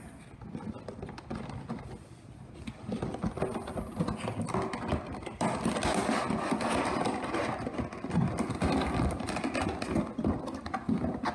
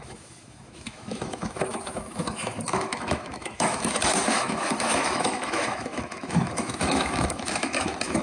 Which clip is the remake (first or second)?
second